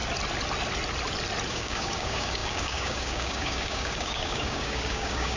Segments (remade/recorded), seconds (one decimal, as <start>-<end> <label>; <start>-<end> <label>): 0.0-1.5 recorded; 1.5-5.4 remade